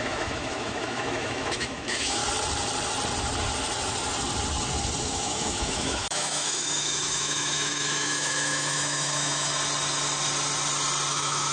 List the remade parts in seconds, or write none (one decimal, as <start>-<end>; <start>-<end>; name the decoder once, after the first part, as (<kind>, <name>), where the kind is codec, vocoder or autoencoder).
0.0-2.2 (autoencoder, DAC-VAE); 5.0-9.5; 11.1-11.5